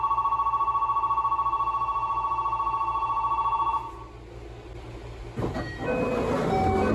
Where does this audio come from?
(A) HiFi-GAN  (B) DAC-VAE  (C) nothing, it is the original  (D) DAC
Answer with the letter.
C